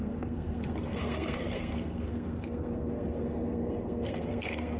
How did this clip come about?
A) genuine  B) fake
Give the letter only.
B